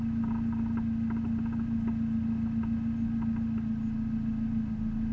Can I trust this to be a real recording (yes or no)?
yes